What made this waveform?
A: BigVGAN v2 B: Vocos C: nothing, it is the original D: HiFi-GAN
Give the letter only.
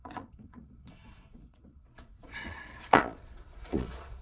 B